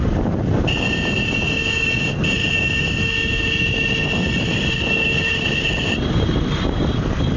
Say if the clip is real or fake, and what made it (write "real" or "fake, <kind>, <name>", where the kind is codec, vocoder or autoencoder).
real